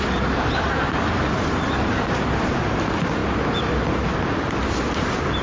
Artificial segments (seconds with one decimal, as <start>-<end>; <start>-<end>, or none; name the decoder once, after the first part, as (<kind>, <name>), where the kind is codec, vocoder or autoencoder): none